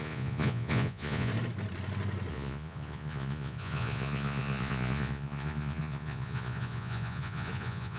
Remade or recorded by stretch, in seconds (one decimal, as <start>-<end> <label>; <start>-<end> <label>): 0.0-1.3 remade; 1.3-2.3 recorded; 2.3-8.0 remade